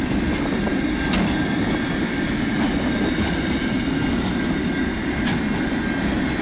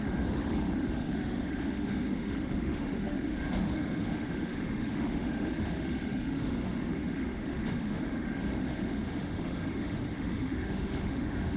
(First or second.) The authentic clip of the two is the first